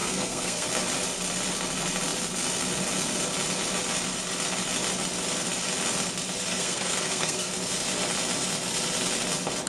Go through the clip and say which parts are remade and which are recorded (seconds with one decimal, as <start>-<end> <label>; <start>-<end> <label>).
0.0-0.7 remade; 0.7-6.5 recorded; 6.5-7.5 remade; 7.5-9.7 recorded

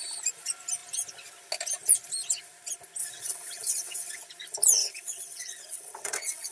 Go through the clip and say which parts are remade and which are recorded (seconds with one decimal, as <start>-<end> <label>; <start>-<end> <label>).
0.0-3.0 recorded; 3.0-4.2 remade; 4.2-4.8 recorded; 4.8-6.5 remade

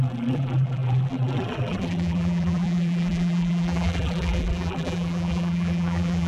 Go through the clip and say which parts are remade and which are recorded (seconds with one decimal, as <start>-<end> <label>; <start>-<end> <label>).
0.0-6.3 remade

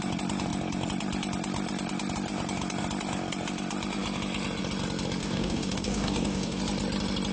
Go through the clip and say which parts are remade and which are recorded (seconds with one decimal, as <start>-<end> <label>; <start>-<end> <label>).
0.0-5.2 recorded; 5.2-6.6 remade; 6.6-7.3 recorded

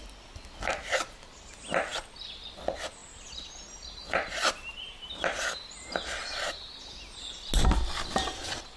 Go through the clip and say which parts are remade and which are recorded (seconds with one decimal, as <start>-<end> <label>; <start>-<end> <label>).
0.0-8.8 recorded

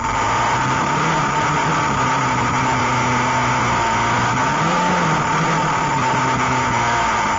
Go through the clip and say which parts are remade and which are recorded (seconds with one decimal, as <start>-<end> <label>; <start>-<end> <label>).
0.0-1.6 recorded; 1.6-5.9 remade; 5.9-7.4 recorded